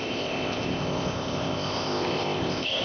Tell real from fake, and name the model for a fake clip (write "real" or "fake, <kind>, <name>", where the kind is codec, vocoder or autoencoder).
fake, codec, ZipCodec